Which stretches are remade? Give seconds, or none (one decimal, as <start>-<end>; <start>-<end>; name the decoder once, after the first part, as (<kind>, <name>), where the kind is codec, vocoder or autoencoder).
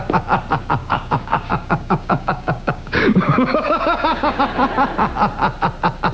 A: 0.8-4.4 (codec, DAC)